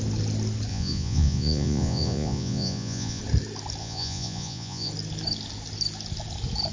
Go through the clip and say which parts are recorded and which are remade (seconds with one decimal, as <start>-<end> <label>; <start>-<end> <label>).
0.0-0.7 recorded; 0.7-3.2 remade; 3.2-3.8 recorded; 3.8-4.9 remade; 4.9-6.7 recorded